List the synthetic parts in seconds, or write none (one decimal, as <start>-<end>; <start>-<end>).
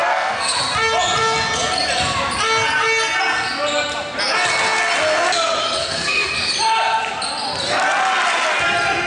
0.0-0.6; 5.8-6.3